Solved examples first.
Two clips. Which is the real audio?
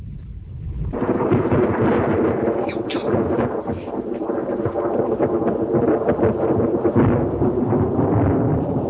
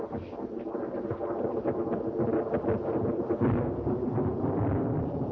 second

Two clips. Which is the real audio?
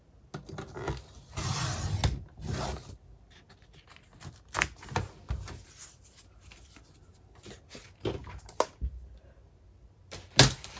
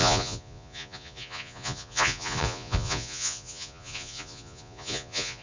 first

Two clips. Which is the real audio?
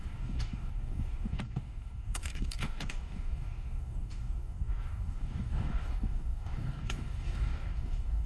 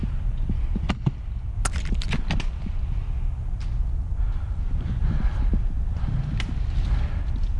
second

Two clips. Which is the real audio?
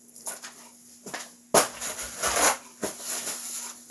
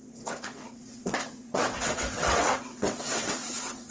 first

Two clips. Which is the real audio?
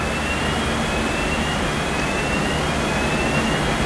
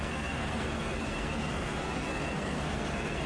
first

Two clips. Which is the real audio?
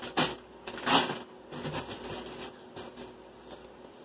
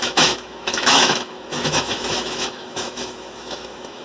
first